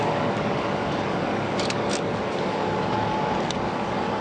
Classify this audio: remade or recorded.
remade